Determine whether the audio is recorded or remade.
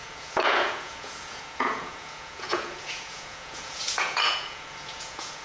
remade